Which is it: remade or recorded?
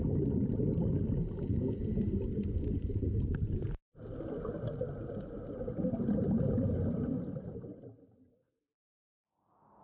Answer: recorded